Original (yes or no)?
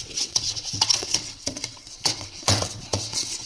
no